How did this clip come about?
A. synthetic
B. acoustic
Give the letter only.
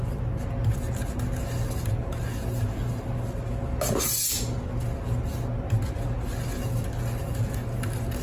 B